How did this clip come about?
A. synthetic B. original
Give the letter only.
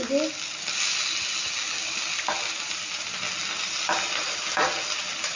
B